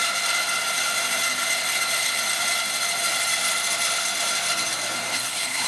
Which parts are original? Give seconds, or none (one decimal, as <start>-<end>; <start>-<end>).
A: 0.0-5.1